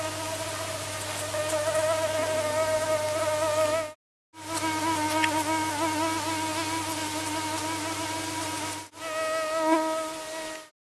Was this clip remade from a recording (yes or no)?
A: no